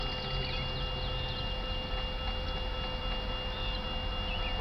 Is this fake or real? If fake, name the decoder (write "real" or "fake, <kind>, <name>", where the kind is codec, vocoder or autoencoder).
real